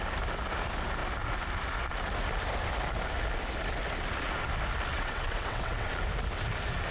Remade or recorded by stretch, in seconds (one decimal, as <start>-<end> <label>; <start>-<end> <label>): 0.0-4.9 recorded; 4.9-5.9 remade; 5.9-6.9 recorded